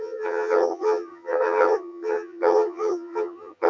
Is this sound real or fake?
fake